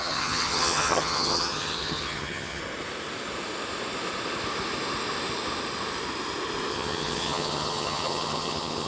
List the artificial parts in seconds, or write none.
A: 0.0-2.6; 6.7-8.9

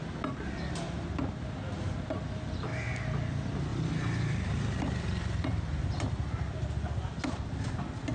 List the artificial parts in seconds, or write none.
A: none

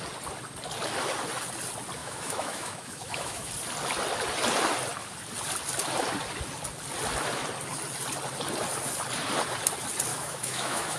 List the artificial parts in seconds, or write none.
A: 2.0-3.5; 10.1-11.0

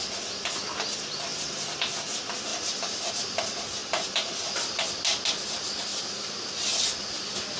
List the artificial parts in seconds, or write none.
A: 1.3-1.9; 2.5-3.1; 3.8-5.0

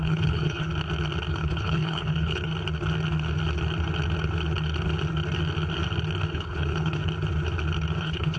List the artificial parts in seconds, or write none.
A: 0.0-0.7; 1.3-2.5; 6.3-7.0; 8.0-8.4

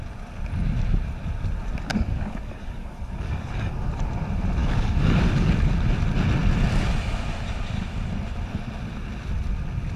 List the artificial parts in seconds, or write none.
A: 1.9-3.9; 4.6-5.5